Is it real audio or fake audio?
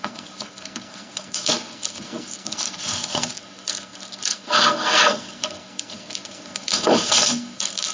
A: fake